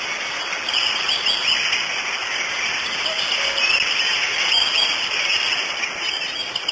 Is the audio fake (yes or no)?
no